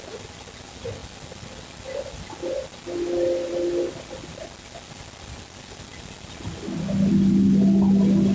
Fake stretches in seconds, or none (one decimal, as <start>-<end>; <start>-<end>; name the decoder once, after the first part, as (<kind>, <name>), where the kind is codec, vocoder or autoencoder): none